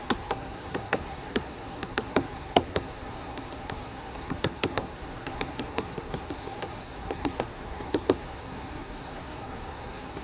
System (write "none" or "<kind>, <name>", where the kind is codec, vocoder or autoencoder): codec, SNAC